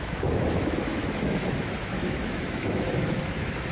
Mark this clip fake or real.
fake